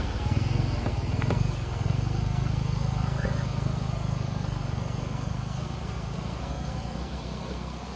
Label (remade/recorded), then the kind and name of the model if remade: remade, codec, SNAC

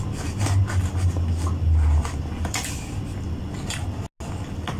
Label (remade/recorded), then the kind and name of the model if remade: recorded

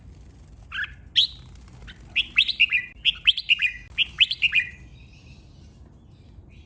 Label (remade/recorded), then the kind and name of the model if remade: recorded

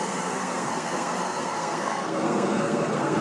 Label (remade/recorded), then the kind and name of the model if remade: remade, codec, SNAC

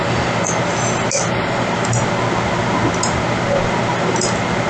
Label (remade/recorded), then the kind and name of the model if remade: recorded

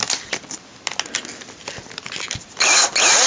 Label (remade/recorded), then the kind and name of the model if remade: recorded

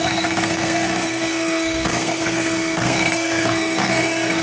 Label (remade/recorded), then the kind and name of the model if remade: remade, codec, SNAC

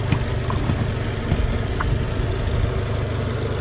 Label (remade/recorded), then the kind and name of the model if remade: recorded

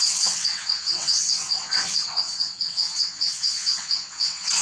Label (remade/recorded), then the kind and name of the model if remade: remade, vocoder, WaveNeXt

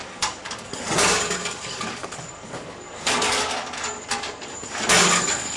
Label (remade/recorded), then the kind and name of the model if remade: remade, codec, DAC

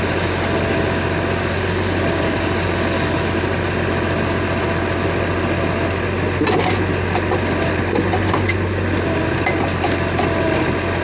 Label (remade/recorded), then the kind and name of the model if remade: recorded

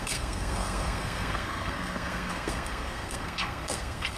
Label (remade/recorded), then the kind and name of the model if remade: remade, codec, SNAC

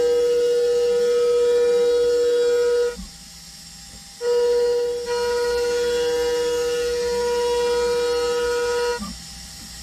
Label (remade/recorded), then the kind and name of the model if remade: recorded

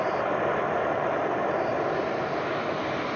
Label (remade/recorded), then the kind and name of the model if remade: recorded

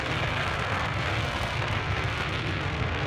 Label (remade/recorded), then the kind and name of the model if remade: remade, codec, SNAC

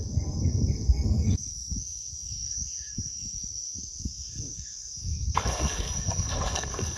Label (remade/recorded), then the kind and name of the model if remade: remade, codec, SNAC